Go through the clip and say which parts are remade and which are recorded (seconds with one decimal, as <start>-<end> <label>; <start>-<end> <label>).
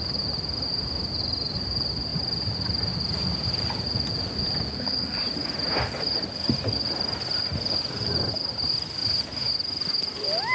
0.0-4.7 recorded; 4.7-5.2 remade; 5.2-10.5 recorded